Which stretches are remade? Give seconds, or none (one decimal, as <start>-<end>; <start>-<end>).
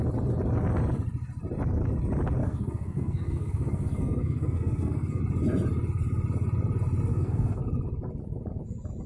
2.4-5.2; 7.1-7.6